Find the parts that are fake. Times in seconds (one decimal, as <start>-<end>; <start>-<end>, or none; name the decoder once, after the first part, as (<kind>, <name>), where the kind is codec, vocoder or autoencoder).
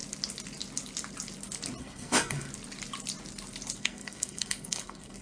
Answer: 1.8-2.5 (codec, SNAC); 3.8-5.2